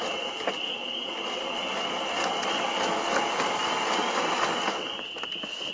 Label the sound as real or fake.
real